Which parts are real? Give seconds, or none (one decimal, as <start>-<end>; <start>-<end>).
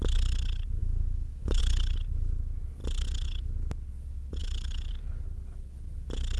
0.0-0.8; 1.6-6.4